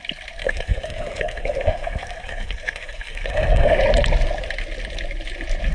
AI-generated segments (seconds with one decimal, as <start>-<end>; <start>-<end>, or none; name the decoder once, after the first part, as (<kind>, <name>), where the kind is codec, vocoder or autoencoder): 0.4-3.8 (codec, SNAC)